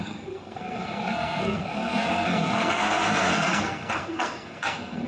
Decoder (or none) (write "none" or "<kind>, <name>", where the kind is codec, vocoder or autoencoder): codec, SNAC